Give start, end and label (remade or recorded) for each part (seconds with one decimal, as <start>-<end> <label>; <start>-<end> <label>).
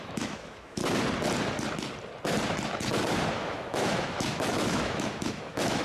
0.0-0.8 remade; 0.8-3.3 recorded; 3.3-5.8 remade